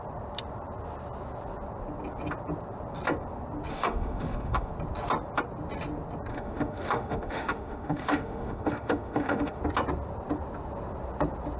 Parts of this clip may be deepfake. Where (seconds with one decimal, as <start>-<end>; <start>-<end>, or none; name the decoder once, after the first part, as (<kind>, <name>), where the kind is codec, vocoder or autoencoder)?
3.7-4.7 (autoencoder, DAC-VAE); 6.3-9.6